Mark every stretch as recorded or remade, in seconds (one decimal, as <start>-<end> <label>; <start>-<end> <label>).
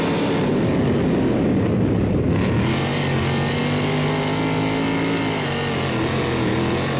0.0-7.0 recorded